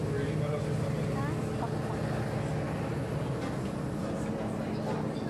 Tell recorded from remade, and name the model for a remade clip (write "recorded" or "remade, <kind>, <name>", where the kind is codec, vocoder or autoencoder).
recorded